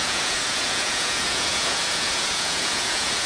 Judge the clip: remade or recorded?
remade